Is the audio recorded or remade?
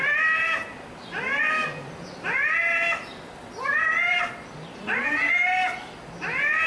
recorded